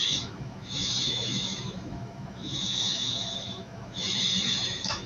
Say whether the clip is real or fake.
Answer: fake